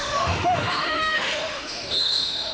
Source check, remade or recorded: remade